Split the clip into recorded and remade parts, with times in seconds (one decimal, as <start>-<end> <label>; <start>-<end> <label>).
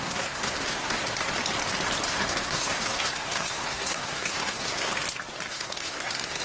0.0-1.0 remade; 1.0-2.1 recorded; 2.1-4.9 remade; 4.9-5.5 recorded; 5.5-6.4 remade